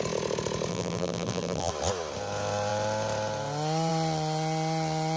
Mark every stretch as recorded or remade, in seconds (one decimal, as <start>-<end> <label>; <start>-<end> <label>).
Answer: 0.0-0.7 recorded; 0.7-1.7 remade; 1.7-5.2 recorded